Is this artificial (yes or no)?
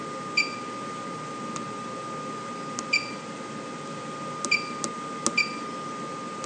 no